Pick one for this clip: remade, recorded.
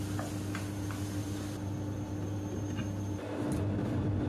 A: recorded